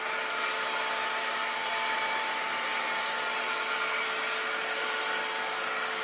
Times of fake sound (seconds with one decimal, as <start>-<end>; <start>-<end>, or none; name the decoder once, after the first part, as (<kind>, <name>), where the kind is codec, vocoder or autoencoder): none